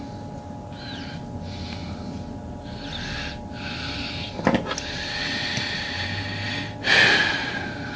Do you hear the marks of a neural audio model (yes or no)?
no